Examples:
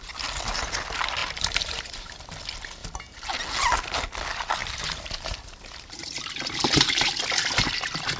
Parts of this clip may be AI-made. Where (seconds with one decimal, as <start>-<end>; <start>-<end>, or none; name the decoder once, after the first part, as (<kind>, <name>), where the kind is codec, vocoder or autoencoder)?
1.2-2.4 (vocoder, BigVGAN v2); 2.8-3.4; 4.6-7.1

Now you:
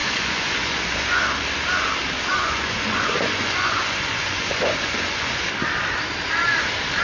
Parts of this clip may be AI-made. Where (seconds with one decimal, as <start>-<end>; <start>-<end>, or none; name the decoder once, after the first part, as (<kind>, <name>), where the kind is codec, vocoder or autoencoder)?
0.0-1.2 (vocoder, Vocos); 2.3-5.4

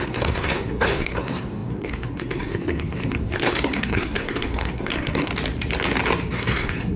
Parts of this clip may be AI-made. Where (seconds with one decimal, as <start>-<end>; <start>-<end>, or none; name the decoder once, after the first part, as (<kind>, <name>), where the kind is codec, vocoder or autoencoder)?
0.0-5.3 (codec, SNAC); 6.3-7.0

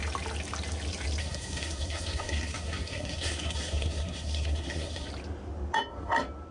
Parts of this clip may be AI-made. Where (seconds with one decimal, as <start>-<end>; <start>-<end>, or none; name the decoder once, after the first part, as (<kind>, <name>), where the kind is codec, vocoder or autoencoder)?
1.2-5.1 (codec, SNAC)